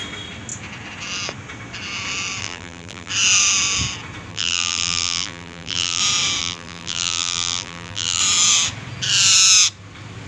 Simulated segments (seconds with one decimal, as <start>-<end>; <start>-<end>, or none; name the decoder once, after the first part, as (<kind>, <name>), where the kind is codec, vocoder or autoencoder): 2.4-3.1 (vocoder, BigVGAN v2); 4.3-6.0; 6.4-8.2